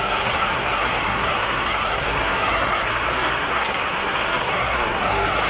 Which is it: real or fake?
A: fake